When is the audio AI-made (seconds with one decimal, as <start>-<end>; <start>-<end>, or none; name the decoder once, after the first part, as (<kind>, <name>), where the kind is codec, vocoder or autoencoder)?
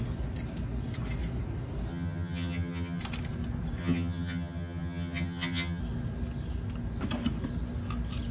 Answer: 1.9-3.0 (vocoder, HiFi-GAN); 3.8-5.8